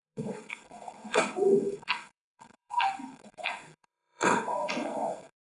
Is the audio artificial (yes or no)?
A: yes